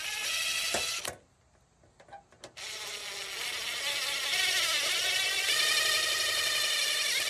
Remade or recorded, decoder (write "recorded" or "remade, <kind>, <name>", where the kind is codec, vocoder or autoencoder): recorded